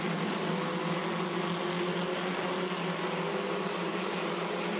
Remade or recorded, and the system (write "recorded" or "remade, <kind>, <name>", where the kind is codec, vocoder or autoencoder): recorded